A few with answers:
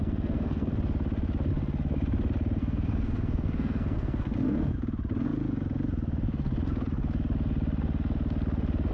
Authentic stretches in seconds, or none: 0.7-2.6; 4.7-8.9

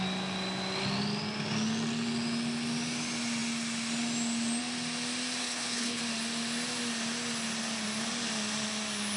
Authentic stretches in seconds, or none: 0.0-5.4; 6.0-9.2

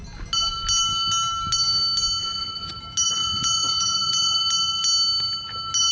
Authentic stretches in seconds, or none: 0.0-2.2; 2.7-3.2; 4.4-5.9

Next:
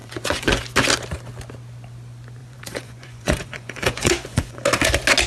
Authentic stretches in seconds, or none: 0.6-2.4; 4.6-5.3